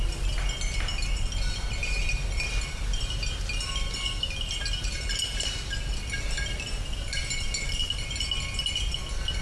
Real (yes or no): yes